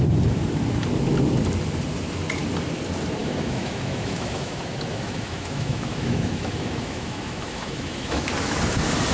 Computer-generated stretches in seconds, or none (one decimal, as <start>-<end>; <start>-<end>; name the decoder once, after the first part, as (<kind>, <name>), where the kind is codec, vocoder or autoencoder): 3.2-8.3 (autoencoder, DAC-VAE)